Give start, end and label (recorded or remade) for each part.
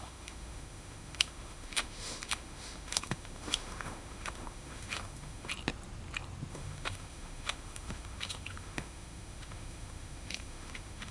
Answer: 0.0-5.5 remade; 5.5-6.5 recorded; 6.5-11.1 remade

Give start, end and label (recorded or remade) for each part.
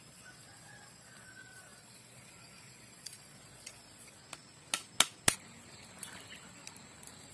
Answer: 0.0-4.2 remade; 4.2-7.3 recorded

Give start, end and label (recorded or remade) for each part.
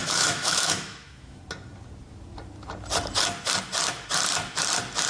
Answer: 0.0-1.4 remade; 1.4-5.1 recorded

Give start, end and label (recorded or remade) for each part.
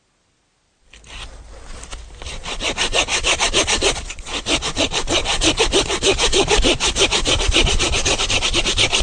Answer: 0.0-3.1 recorded; 3.1-4.7 remade; 4.7-5.2 recorded; 5.2-8.2 remade; 8.2-9.0 recorded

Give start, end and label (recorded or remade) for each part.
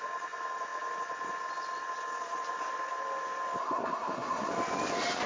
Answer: 0.0-3.6 recorded; 3.6-4.5 remade; 4.5-5.3 recorded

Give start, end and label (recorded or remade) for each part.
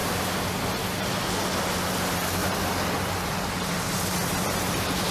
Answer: 0.0-5.1 recorded